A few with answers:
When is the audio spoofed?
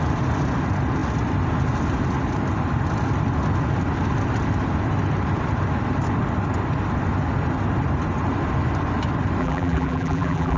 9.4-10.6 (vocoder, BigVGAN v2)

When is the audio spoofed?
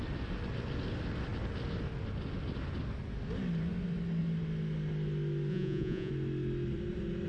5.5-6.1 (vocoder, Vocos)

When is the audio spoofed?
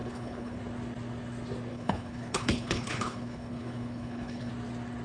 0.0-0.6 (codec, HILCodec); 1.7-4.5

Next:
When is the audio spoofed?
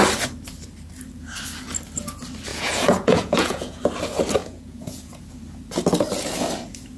2.5-3.8 (vocoder, Vocos); 4.4-5.2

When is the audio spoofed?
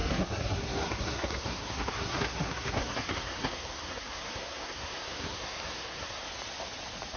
0.0-6.2 (codec, SNAC)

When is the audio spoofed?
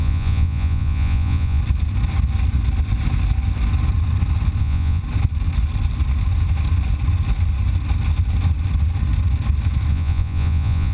0.0-1.6 (vocoder, Vocos); 4.6-5.0; 9.9-10.9